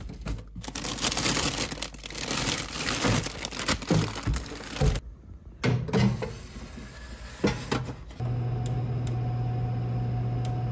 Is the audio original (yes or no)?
yes